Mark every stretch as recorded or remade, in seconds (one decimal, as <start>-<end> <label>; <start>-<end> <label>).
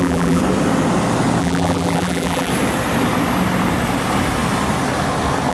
0.0-0.4 remade; 0.4-1.4 recorded; 1.4-2.5 remade; 2.5-5.5 recorded